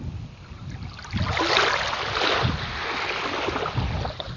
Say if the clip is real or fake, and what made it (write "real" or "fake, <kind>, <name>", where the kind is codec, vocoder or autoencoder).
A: real